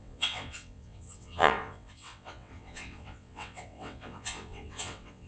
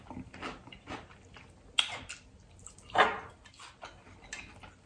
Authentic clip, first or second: second